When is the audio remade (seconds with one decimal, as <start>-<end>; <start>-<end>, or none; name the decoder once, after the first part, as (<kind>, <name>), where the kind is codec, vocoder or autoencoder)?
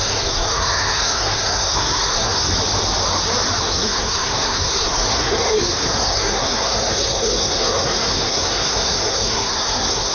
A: 0.0-2.5 (codec, SNAC); 3.6-10.1